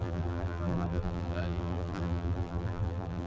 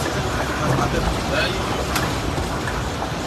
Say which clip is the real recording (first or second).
second